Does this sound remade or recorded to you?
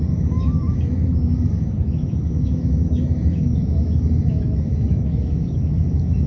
remade